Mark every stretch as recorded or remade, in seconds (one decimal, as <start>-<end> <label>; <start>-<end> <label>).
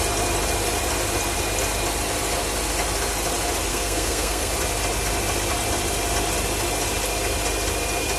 0.0-3.7 recorded; 3.7-4.5 remade; 4.5-8.2 recorded